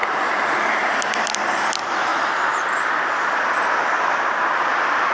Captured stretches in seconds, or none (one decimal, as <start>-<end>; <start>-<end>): 0.6-2.1; 4.2-5.1

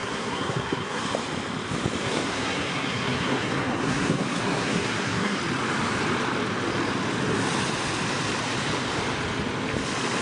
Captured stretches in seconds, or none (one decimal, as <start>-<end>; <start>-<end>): 1.0-2.0; 5.4-10.2

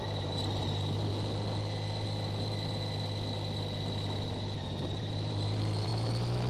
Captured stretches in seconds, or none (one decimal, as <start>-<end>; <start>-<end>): 1.1-5.0; 5.9-6.5

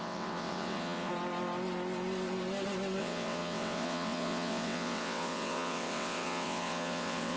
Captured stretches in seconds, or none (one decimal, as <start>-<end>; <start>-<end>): 1.1-3.0